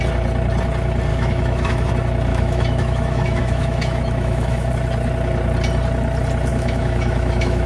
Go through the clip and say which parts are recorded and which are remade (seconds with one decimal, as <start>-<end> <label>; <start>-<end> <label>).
0.0-1.1 recorded; 1.1-1.9 remade; 1.9-2.3 recorded; 2.3-4.7 remade; 4.7-6.5 recorded; 6.5-7.7 remade